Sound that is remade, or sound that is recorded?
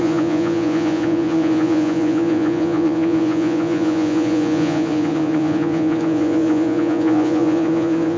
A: remade